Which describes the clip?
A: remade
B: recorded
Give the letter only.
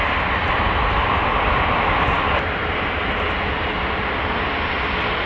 B